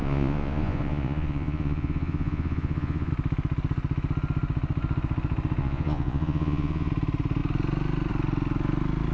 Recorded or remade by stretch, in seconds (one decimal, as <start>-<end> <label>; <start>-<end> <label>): 0.0-3.1 remade; 3.1-5.6 recorded; 5.6-6.9 remade; 6.9-9.1 recorded